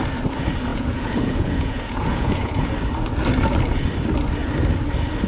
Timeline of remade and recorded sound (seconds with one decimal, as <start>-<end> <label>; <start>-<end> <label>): 0.0-0.7 recorded; 0.7-2.7 remade; 2.7-5.3 recorded